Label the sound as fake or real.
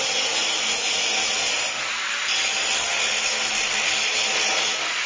real